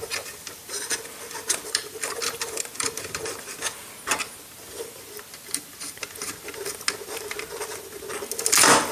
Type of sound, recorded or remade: recorded